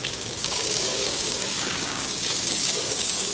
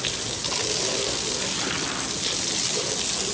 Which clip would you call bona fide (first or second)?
second